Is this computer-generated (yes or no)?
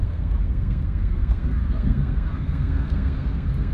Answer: yes